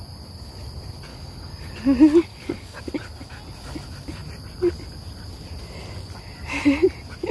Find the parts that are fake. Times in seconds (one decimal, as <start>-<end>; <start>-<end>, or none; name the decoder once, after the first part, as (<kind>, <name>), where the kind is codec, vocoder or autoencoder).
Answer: 1.1-1.7 (codec, DAC); 2.3-2.8